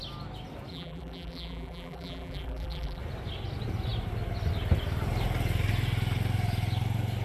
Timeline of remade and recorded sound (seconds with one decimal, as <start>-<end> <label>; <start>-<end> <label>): 0.0-0.7 recorded; 0.7-3.0 remade; 3.0-7.2 recorded